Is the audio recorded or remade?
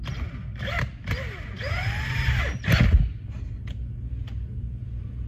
recorded